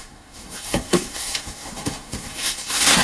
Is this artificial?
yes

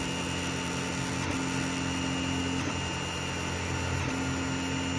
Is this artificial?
no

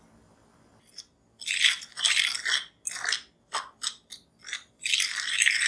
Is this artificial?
no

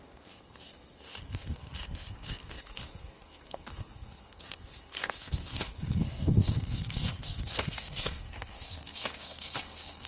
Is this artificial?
yes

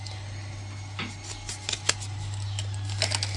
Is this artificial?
no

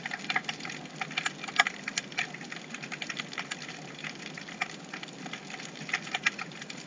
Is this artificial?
no